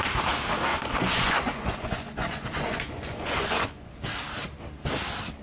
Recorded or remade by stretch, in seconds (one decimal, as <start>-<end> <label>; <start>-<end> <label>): 0.0-0.7 recorded; 0.7-3.9 remade; 3.9-5.4 recorded